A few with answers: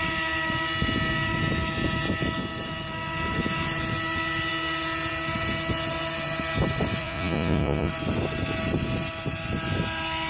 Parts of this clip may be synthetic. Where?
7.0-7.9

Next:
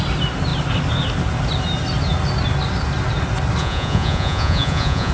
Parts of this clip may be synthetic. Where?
3.6-5.1

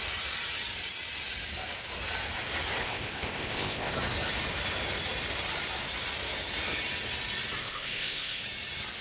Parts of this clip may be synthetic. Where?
2.8-3.9; 7.6-8.4

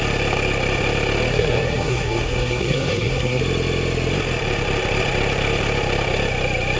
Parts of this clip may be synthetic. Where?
1.3-3.4